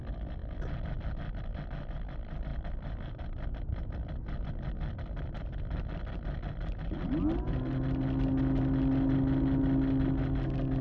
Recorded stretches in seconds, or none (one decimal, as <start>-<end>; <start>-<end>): 0.0-10.8